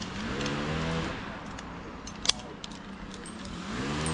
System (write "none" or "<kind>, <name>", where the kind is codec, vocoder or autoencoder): none